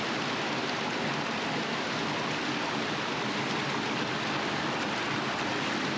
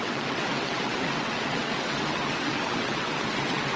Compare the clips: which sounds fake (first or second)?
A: second